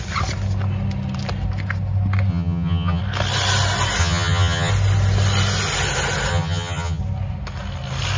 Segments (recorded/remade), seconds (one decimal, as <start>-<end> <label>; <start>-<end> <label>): 0.0-2.3 recorded; 2.3-3.0 remade; 3.0-4.0 recorded; 4.0-4.7 remade; 4.7-6.3 recorded; 6.3-7.0 remade; 7.0-8.2 recorded